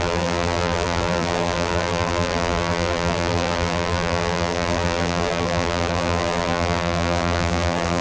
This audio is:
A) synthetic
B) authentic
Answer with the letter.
A